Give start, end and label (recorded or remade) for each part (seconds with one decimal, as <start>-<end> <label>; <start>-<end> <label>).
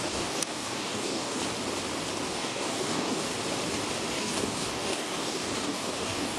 0.0-1.4 remade; 1.4-2.3 recorded; 2.3-3.3 remade; 3.3-4.1 recorded; 4.1-6.4 remade